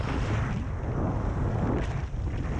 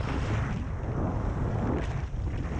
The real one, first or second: first